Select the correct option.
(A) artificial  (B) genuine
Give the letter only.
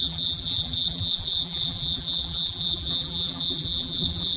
A